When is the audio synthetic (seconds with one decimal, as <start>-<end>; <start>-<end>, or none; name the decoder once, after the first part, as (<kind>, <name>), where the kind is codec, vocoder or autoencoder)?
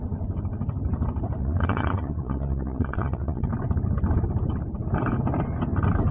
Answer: 1.4-3.5 (vocoder, Vocos)